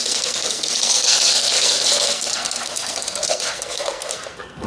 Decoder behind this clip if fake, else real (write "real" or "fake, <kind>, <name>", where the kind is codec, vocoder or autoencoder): fake, codec, SNAC